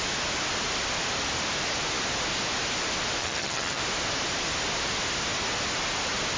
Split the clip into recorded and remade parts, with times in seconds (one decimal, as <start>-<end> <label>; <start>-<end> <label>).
0.0-3.2 recorded; 3.2-3.8 remade; 3.8-6.4 recorded